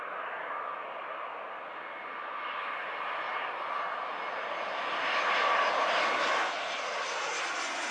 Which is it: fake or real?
real